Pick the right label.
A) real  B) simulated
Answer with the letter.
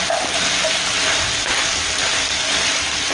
B